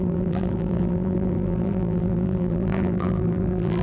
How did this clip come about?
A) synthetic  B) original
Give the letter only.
A